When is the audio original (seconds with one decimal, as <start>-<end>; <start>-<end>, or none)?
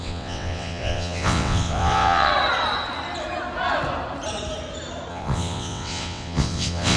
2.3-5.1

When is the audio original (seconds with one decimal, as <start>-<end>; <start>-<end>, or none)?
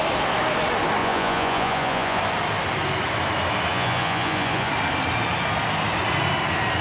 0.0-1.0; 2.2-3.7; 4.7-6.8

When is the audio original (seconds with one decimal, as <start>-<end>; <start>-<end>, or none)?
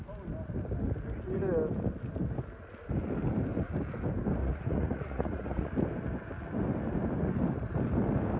0.0-4.4; 5.7-8.4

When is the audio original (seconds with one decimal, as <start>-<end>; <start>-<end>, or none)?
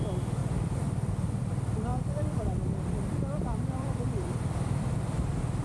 0.0-0.4; 1.4-1.9; 5.0-5.6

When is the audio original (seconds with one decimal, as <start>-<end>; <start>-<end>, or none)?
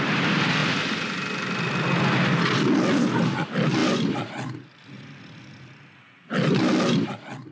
0.0-7.5